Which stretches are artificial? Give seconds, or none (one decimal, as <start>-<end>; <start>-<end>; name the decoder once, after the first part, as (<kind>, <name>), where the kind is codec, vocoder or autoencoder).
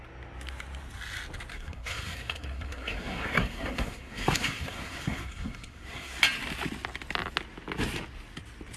1.5-6.2 (codec, SNAC)